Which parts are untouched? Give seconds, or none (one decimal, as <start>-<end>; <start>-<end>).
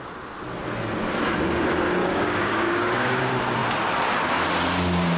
0.0-2.0; 3.2-5.2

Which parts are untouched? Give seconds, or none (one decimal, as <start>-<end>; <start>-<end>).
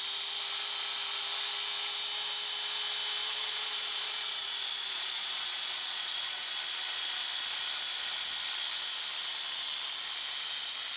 0.0-3.2; 6.6-11.0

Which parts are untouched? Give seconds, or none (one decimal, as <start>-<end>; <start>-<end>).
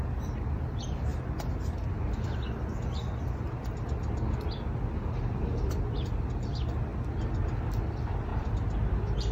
0.0-6.9; 7.6-8.3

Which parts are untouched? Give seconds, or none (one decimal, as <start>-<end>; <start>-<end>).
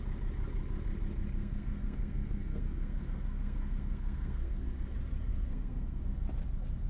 0.0-1.4; 4.7-5.3; 6.0-6.9